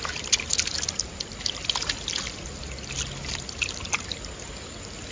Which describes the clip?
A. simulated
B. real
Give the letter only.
B